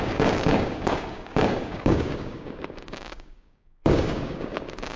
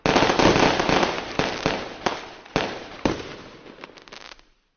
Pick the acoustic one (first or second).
second